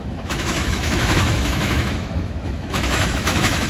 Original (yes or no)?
no